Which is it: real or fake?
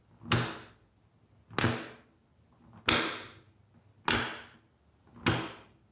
real